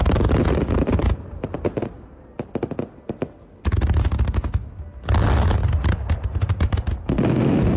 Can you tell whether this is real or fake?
real